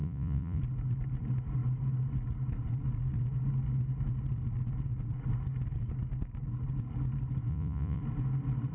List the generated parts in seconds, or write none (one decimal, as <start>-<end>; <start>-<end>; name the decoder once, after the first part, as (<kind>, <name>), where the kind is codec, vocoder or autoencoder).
0.0-0.6 (vocoder, Vocos); 7.5-8.0